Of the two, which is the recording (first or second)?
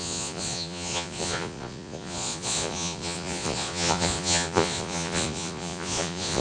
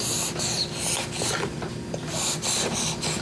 second